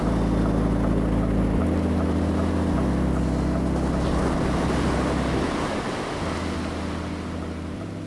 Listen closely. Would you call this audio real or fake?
real